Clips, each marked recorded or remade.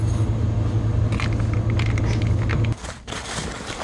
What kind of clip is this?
recorded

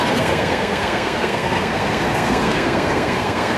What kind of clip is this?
remade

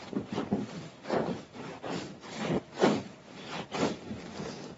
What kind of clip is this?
recorded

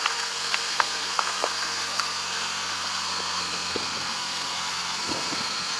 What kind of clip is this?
remade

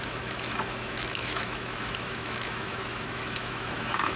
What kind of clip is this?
remade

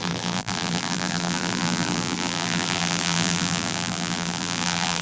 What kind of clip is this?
remade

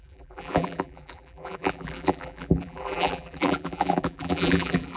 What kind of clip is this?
remade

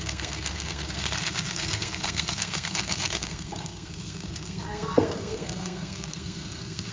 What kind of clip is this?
remade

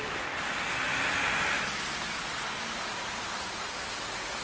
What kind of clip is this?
recorded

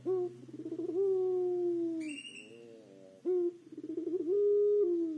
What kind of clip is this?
recorded